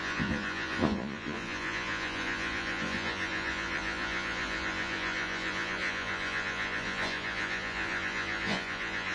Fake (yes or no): yes